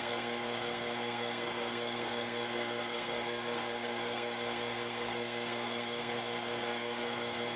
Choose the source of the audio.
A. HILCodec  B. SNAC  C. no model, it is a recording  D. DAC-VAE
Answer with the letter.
B